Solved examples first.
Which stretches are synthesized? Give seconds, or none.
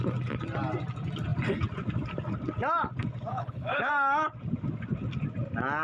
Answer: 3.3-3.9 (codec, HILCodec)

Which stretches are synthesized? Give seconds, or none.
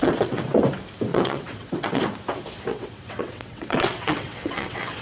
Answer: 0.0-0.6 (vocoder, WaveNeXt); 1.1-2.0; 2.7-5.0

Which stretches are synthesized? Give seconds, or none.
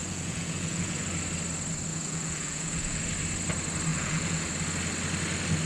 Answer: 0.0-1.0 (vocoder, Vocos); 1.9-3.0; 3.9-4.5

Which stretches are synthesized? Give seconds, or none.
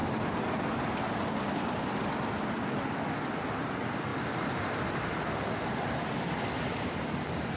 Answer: 0.0-1.1 (vocoder, BigVGAN v2); 4.1-5.2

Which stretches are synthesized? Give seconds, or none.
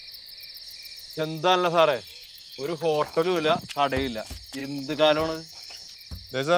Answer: 2.1-3.5 (codec, DAC); 4.6-5.9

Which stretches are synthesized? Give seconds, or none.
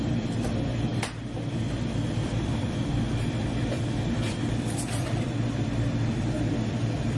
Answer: 0.0-7.2 (vocoder, BigVGAN v2)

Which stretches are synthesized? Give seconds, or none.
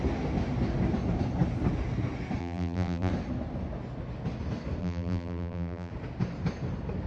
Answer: 2.4-3.1 (vocoder, BigVGAN v2); 4.8-5.9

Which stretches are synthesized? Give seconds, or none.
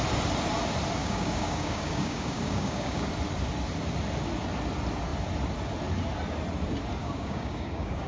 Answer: 1.0-3.1 (codec, DAC); 7.0-8.1